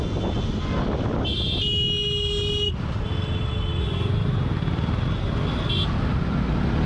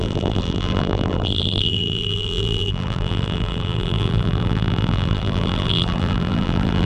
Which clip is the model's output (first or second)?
second